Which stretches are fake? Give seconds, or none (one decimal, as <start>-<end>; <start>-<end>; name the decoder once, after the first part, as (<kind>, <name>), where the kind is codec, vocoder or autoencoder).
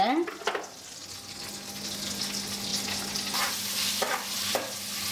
none